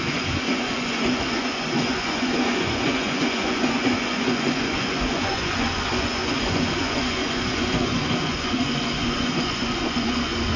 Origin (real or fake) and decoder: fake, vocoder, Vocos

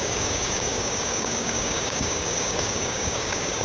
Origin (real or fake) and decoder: fake, codec, DAC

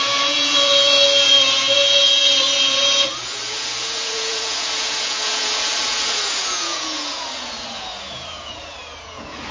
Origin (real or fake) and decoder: fake, vocoder, Vocos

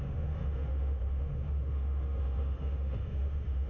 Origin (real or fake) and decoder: fake, autoencoder, DAC-VAE